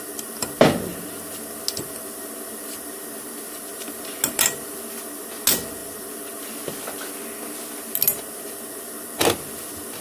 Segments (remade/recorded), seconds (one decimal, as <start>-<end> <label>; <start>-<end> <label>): 0.0-10.0 recorded

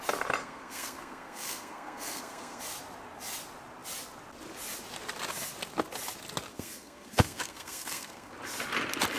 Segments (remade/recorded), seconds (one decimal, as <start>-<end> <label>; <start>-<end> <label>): 0.0-0.4 recorded; 0.4-2.6 remade; 2.6-6.5 recorded; 6.5-8.3 remade; 8.3-9.2 recorded

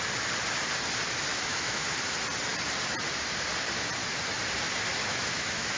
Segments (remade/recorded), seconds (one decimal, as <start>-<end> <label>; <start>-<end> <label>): 0.0-1.3 recorded; 1.3-1.9 remade; 1.9-5.0 recorded; 5.0-5.8 remade

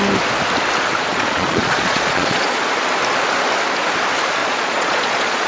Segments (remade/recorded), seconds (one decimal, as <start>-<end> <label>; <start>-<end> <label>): 0.0-1.1 recorded; 1.1-2.6 remade; 2.6-4.4 recorded; 4.4-5.5 remade

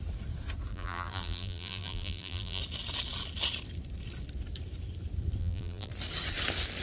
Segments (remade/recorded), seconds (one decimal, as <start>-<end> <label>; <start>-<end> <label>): 0.0-0.7 recorded; 0.7-2.6 remade; 2.6-5.4 recorded; 5.4-5.9 remade; 5.9-6.8 recorded